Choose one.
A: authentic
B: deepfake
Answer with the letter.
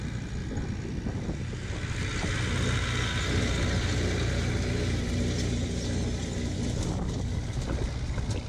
A